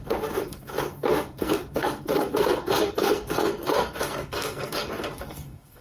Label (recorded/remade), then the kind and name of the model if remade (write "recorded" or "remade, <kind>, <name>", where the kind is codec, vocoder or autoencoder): remade, codec, SNAC